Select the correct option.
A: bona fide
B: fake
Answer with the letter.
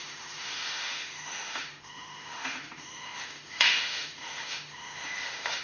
B